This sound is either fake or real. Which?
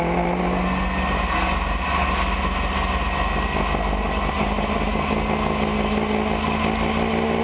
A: real